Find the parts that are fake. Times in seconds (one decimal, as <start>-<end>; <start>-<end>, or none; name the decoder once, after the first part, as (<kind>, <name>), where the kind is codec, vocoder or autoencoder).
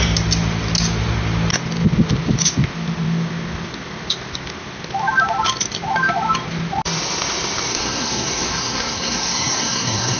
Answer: 7.7-10.2 (codec, SNAC)